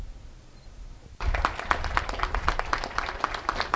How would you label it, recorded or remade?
recorded